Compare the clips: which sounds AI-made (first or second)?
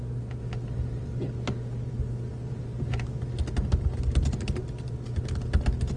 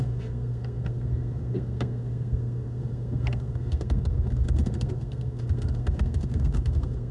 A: second